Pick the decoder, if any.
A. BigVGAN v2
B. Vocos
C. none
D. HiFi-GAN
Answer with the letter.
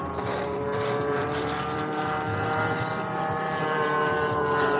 A